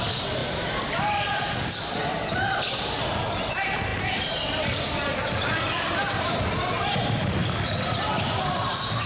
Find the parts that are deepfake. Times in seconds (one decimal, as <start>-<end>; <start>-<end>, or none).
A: 0.4-2.3; 3.9-6.5; 7.4-8.6